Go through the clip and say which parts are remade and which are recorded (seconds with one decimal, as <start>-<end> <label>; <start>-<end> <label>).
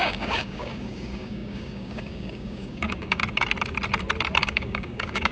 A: 0.0-3.2 remade; 3.2-4.4 recorded; 4.4-5.3 remade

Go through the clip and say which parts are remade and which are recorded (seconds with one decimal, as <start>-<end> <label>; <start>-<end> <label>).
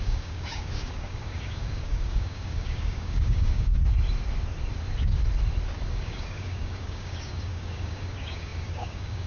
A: 0.0-3.7 remade; 3.7-5.9 recorded; 5.9-9.3 remade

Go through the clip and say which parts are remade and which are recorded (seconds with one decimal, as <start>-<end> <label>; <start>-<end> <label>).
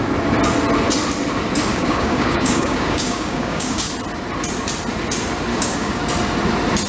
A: 0.0-1.7 recorded; 1.7-3.9 remade; 3.9-5.5 recorded; 5.5-6.0 remade; 6.0-6.9 recorded